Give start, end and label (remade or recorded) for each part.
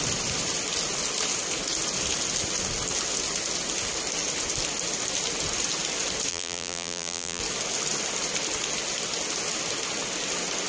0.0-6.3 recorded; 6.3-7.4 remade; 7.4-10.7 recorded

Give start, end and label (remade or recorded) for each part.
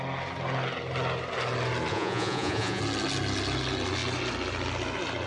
0.0-1.9 recorded; 1.9-2.8 remade; 2.8-5.3 recorded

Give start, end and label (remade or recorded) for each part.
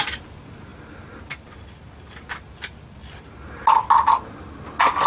0.0-5.1 recorded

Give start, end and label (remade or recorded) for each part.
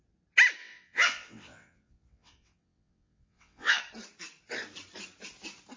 0.0-0.6 recorded; 0.6-3.8 remade; 3.8-5.8 recorded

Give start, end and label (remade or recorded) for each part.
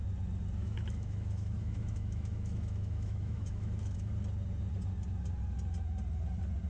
0.0-0.6 recorded; 0.6-4.1 remade; 4.1-6.7 recorded